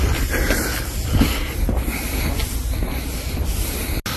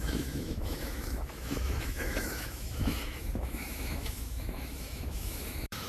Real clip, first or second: first